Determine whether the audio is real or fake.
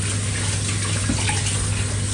real